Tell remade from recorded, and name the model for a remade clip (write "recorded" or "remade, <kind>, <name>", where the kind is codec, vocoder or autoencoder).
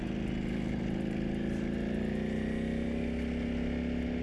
recorded